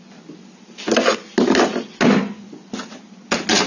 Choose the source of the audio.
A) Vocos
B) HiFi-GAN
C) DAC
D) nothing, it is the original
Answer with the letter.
D